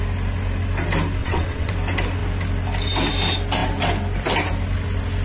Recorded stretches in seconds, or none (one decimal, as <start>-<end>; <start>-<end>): 0.0-1.2; 1.7-5.2